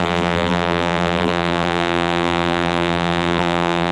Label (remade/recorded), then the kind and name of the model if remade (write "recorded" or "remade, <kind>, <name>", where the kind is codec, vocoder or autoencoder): remade, vocoder, BigVGAN v2